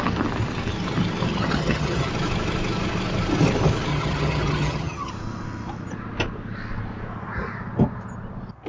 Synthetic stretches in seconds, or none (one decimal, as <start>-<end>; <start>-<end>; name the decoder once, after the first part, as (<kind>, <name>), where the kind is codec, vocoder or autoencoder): 1.3-2.1 (vocoder, HiFi-GAN); 3.9-5.1